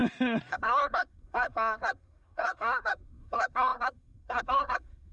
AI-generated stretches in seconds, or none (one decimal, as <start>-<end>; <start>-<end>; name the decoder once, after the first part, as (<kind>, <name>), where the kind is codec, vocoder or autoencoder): 0.5-5.1 (codec, SNAC)